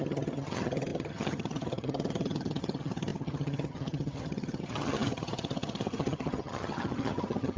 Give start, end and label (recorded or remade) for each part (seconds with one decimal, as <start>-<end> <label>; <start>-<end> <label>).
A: 0.0-7.6 remade